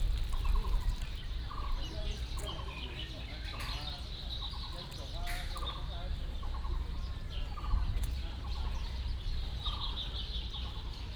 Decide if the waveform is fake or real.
real